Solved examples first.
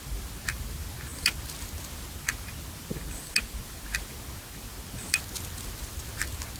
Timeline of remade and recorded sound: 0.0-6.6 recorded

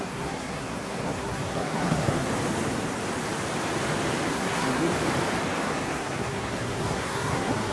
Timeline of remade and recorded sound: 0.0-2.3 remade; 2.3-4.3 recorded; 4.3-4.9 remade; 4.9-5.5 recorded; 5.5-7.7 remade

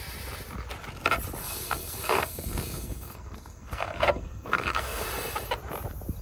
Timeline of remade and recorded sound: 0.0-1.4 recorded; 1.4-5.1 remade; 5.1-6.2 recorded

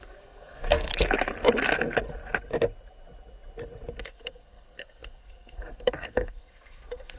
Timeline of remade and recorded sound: 0.0-0.9 remade; 0.9-4.0 recorded; 4.0-7.2 remade

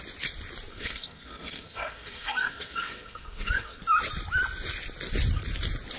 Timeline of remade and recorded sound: 0.0-0.7 recorded; 0.7-3.8 remade; 3.8-6.0 recorded

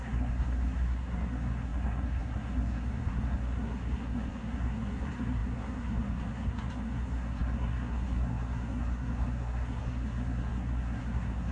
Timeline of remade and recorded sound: 0.0-11.5 remade

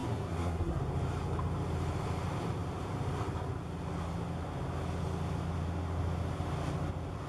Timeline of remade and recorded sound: 0.0-0.8 remade; 0.8-7.3 recorded